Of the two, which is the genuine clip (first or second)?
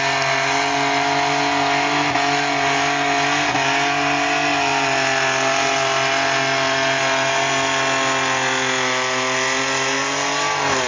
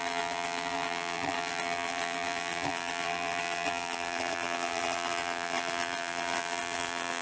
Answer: first